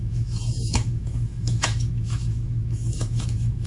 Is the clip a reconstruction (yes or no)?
yes